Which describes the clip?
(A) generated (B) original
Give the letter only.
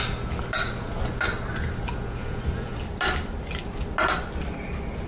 B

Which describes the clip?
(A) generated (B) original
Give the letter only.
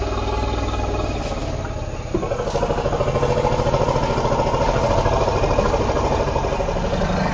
B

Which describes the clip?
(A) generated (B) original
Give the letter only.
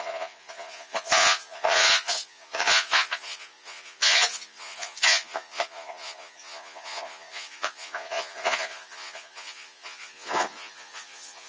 A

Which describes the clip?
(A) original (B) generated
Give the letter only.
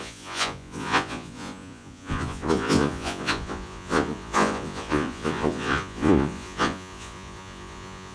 B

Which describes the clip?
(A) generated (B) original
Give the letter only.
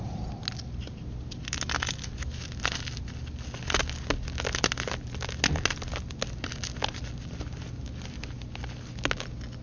B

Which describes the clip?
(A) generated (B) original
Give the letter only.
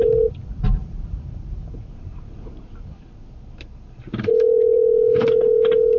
A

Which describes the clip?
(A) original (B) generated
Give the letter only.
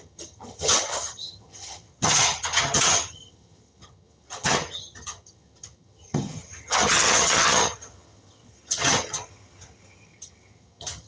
B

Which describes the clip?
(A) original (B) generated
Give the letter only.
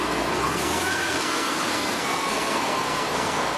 B